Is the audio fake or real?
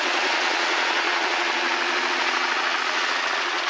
fake